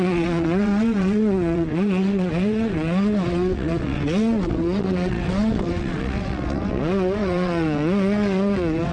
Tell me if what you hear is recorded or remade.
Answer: remade